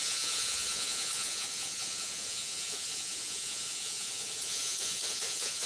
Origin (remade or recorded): remade